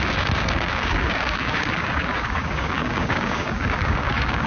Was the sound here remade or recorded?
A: remade